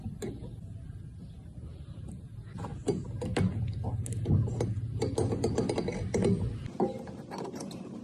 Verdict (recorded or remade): recorded